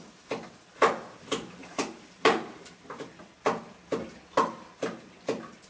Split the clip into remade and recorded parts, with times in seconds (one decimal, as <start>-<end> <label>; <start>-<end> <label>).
0.0-5.7 recorded